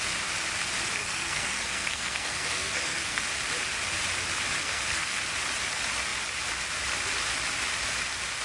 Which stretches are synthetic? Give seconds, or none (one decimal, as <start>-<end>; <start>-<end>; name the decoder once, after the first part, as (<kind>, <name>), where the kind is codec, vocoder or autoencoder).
1.0-3.2 (codec, SNAC); 4.6-5.2